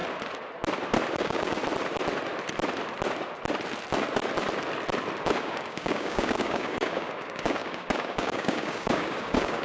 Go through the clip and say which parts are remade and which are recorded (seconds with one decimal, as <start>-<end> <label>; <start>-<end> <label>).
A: 0.0-1.1 recorded; 1.1-1.6 remade; 1.6-5.4 recorded; 5.4-9.6 remade